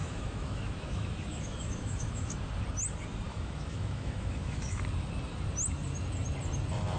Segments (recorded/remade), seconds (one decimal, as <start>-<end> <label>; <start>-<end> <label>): 0.0-2.3 remade; 2.3-3.3 recorded; 3.3-4.8 remade; 4.8-7.0 recorded